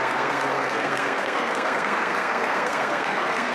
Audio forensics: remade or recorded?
remade